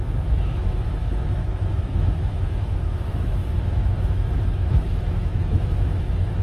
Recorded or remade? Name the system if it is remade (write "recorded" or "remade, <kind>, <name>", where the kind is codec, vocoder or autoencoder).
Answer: remade, autoencoder, DAC-VAE